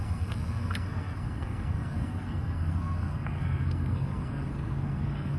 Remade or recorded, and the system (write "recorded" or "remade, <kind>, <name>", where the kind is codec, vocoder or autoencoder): remade, codec, SNAC